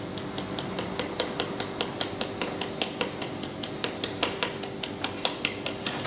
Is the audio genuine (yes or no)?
yes